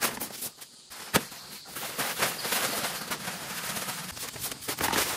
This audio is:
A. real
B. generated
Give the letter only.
A